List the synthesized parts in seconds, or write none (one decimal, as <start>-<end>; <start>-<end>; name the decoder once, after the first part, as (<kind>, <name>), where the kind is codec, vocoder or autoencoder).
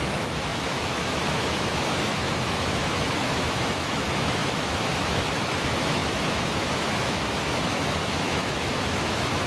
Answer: 0.0-9.5 (autoencoder, DAC-VAE)